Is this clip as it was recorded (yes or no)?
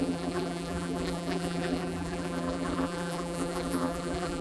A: no